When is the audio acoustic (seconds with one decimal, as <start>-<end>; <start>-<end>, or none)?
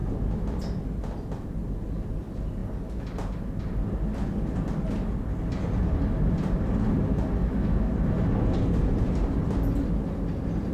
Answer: 0.0-7.4; 7.9-10.7